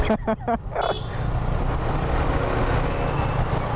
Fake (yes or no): no